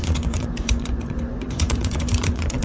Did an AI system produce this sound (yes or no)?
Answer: yes